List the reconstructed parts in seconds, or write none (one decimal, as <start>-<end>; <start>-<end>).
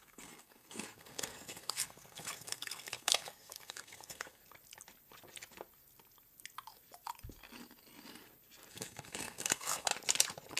0.0-4.4; 8.7-9.9